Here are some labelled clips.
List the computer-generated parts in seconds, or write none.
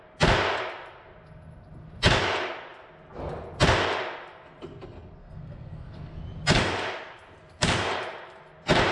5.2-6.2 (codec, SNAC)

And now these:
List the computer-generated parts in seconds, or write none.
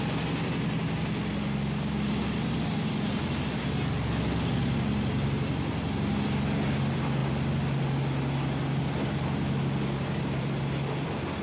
none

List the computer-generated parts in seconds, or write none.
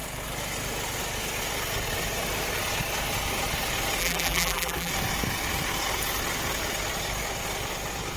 4.0-4.9 (vocoder, BigVGAN v2)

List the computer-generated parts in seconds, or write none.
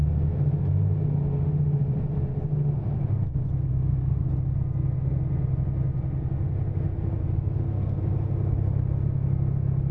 3.7-4.3 (codec, SNAC); 7.2-8.0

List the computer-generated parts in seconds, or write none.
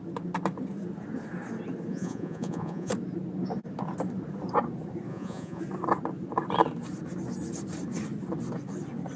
1.9-2.9 (vocoder, Vocos); 5.1-5.6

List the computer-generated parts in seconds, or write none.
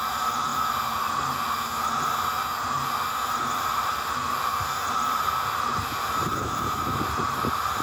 3.7-4.2 (vocoder, BigVGAN v2); 6.3-7.0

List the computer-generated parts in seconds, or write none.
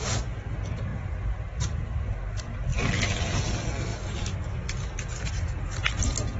0.9-2.2 (vocoder, BigVGAN v2); 2.7-3.4; 3.9-4.5